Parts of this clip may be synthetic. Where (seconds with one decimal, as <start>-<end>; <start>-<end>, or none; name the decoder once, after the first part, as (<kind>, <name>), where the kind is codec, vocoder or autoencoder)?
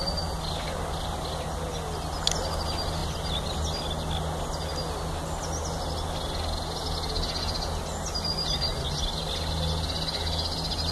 none